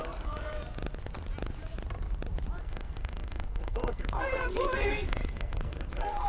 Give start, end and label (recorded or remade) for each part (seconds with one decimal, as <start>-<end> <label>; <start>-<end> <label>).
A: 0.0-0.6 remade; 0.6-2.6 recorded; 2.6-6.3 remade